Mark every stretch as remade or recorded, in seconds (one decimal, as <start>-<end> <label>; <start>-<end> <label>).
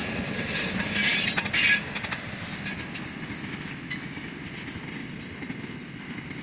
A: 0.0-0.6 remade; 0.6-6.4 recorded